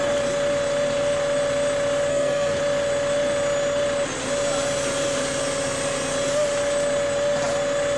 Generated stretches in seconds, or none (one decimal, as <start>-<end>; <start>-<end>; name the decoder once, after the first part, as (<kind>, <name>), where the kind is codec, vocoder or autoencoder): 2.1-2.6 (codec, SNAC)